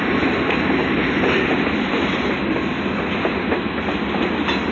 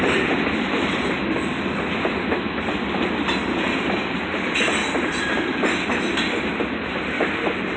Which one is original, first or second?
first